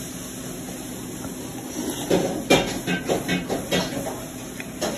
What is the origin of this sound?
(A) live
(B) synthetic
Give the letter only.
A